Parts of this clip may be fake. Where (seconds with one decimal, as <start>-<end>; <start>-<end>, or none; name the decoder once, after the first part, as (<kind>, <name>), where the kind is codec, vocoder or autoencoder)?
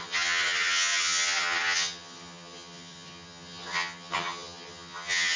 0.0-5.4 (vocoder, HiFi-GAN)